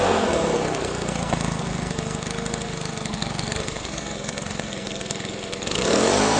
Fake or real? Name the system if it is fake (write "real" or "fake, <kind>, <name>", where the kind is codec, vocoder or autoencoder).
fake, codec, SNAC